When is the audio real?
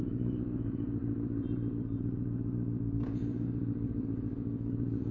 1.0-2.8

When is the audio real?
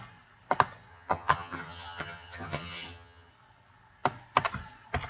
0.0-0.9; 3.3-5.1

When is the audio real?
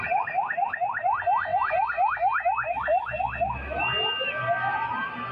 0.0-5.3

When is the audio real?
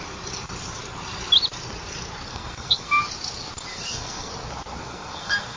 0.0-2.3; 3.0-3.7; 4.3-4.8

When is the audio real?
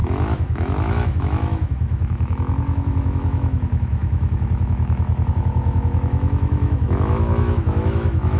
none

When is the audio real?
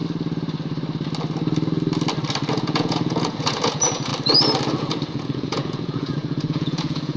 0.0-2.5; 4.1-4.8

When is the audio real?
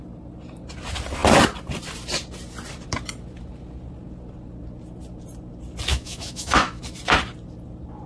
0.0-5.9; 6.8-8.1